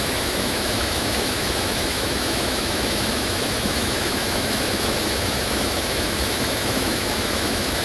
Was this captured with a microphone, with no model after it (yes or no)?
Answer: no